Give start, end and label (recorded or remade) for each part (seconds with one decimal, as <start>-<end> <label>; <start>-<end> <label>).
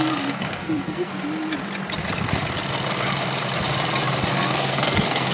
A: 0.0-1.1 remade; 1.1-4.3 recorded; 4.3-5.3 remade